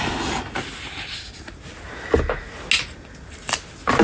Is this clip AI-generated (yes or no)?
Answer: no